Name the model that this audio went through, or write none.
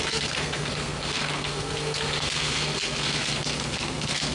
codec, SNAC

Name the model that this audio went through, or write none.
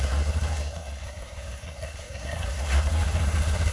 codec, SNAC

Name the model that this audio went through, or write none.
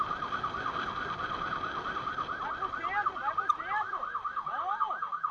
none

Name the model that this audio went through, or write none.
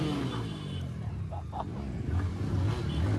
none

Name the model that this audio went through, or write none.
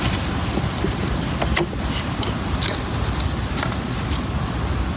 none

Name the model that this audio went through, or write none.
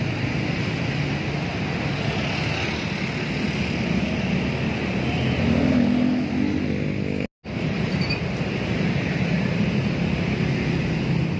none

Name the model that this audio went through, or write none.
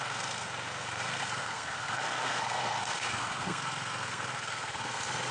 codec, SNAC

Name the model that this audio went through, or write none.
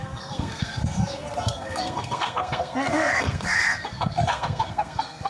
codec, SNAC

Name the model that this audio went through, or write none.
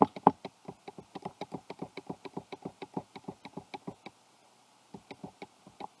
none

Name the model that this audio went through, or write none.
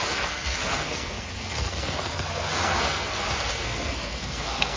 codec, SNAC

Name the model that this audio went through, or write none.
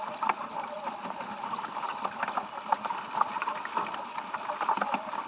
none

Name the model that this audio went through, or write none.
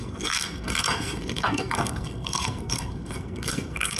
codec, SNAC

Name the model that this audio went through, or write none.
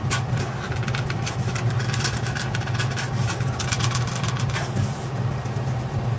none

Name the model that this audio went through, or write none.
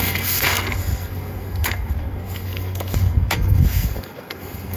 codec, SNAC